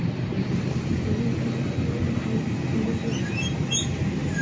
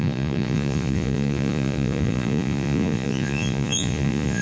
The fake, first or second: second